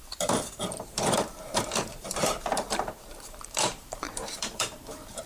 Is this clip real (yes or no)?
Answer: no